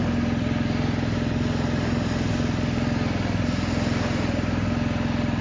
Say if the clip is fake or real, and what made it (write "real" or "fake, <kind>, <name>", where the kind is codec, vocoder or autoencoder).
real